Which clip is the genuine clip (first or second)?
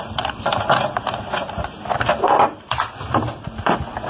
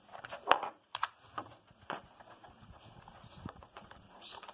first